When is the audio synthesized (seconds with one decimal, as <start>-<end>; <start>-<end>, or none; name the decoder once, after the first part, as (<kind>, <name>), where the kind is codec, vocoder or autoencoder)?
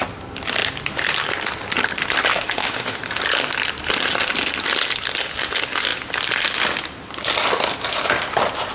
2.3-3.0 (autoencoder, DAC-VAE)